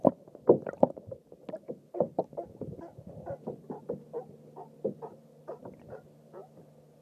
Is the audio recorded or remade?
recorded